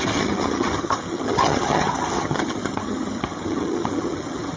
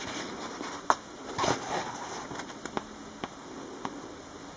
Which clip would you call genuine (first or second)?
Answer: second